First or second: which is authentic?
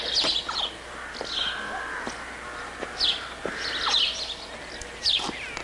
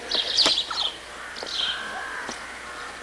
first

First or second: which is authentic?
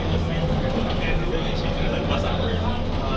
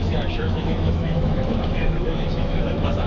first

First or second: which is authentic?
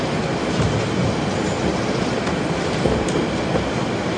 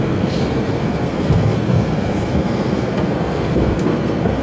first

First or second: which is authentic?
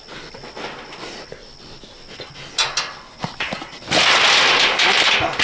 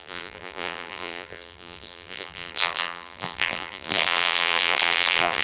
first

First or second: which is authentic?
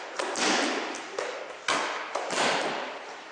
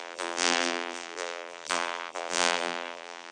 first